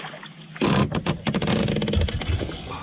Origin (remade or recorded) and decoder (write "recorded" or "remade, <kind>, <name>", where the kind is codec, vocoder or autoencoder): recorded